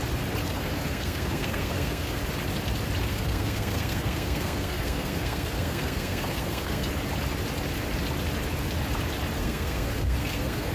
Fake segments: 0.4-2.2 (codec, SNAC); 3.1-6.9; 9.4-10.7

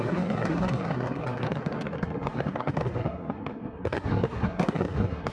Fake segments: 0.0-5.3 (codec, SNAC)